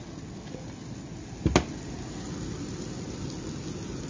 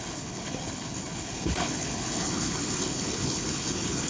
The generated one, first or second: second